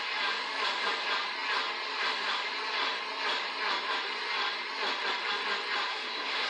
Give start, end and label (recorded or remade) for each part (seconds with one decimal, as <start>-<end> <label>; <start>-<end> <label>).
0.0-5.9 recorded; 5.9-6.5 remade